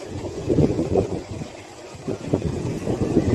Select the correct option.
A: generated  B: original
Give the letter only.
A